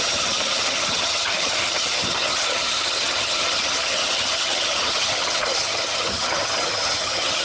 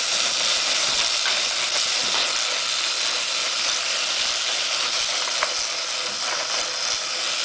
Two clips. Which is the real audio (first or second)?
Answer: second